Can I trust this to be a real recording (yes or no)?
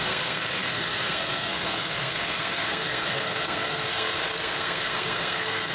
no